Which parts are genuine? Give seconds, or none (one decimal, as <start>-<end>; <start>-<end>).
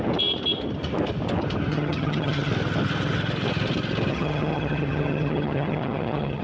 0.0-1.7; 2.5-4.1